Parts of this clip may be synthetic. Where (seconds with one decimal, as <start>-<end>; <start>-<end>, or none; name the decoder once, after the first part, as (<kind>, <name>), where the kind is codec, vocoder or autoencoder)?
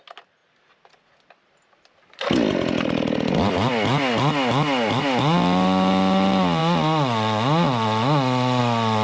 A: none